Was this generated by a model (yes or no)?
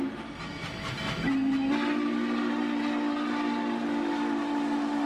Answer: no